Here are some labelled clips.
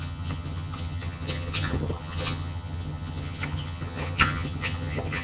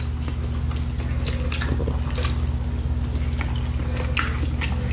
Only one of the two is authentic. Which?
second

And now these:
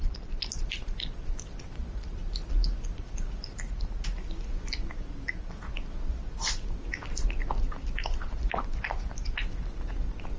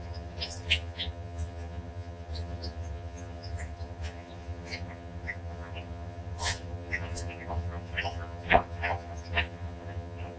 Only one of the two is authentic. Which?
first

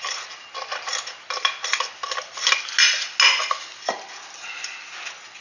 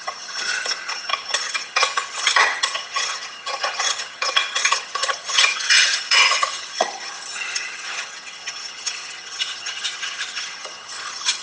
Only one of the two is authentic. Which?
first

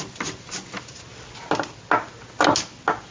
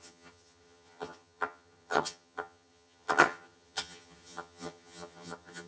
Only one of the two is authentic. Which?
first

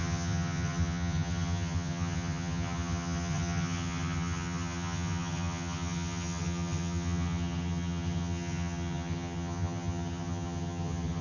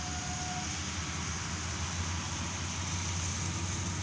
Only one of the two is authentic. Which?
second